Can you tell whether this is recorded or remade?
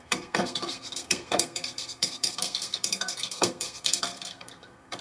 remade